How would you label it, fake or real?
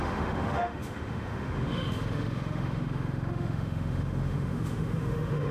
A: fake